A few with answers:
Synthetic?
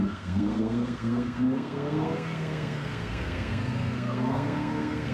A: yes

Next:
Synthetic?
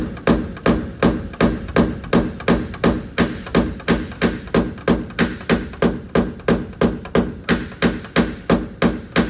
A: no